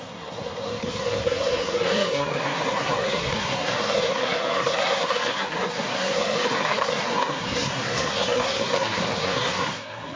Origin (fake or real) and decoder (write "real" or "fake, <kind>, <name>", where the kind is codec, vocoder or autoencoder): fake, codec, SNAC